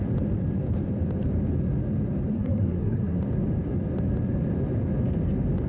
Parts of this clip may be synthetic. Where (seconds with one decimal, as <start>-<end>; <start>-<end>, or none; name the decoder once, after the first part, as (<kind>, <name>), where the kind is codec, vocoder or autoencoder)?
2.3-3.2 (codec, SNAC)